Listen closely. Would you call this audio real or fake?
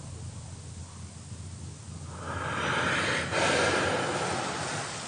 real